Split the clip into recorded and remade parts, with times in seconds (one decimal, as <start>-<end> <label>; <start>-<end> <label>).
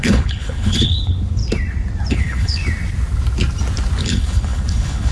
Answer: 0.0-1.4 remade; 1.4-2.1 recorded; 2.1-2.6 remade; 2.6-4.0 recorded; 4.0-5.1 remade